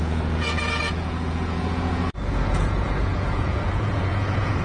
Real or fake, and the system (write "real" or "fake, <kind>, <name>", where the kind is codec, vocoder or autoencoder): fake, vocoder, Vocos